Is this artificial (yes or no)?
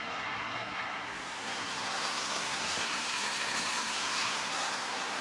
yes